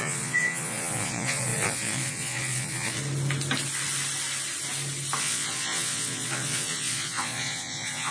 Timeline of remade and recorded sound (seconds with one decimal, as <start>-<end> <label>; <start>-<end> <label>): 0.0-3.0 remade; 3.0-5.2 recorded; 5.2-8.1 remade